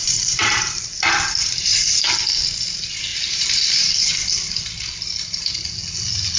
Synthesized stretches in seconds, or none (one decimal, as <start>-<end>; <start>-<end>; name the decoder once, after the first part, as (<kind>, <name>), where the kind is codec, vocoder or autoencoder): 0.0-2.0 (vocoder, BigVGAN v2); 3.1-4.1